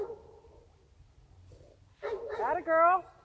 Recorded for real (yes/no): yes